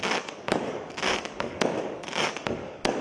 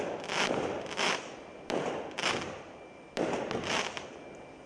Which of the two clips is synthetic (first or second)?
first